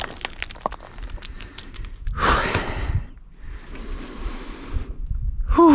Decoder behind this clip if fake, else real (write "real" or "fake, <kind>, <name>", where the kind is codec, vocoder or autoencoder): real